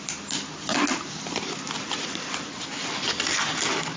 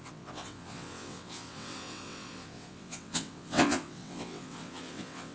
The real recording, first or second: first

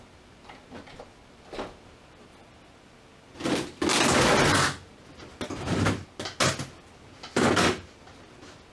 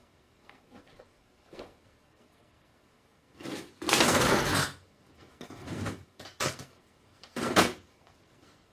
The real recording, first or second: first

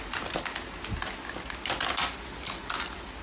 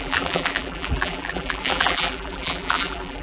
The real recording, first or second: first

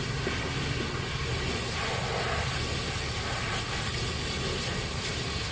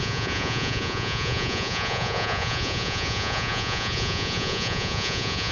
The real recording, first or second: first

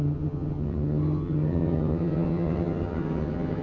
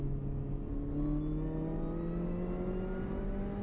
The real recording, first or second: second